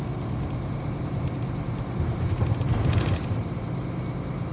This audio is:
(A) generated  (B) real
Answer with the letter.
B